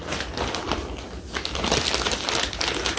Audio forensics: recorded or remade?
recorded